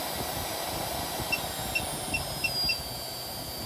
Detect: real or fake real